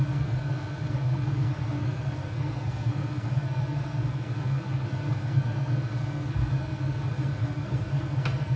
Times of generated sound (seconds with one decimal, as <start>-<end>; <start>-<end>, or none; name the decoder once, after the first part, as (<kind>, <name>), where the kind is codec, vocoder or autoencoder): 0.0-8.6 (codec, SNAC)